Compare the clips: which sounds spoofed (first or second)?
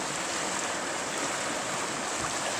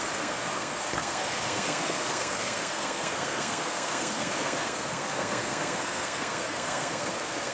second